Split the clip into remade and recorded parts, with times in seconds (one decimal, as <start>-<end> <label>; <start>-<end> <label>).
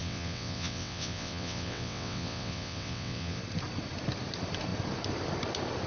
0.0-3.4 remade; 3.4-5.9 recorded